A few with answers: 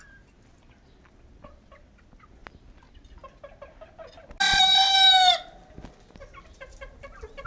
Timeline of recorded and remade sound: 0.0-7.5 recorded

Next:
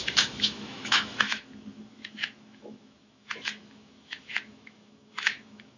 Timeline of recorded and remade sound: 0.0-5.8 remade

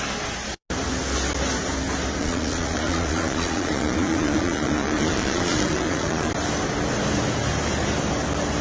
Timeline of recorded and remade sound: 0.0-2.2 recorded; 2.2-6.3 remade; 6.3-8.6 recorded

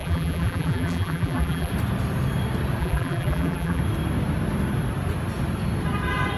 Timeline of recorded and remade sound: 0.0-1.7 remade; 1.7-2.8 recorded; 2.8-3.8 remade; 3.8-6.4 recorded

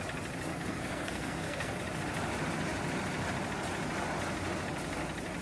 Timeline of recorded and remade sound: 0.0-0.5 recorded; 0.5-1.8 remade; 1.8-5.4 recorded